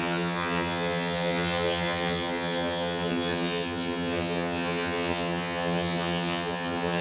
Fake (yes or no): yes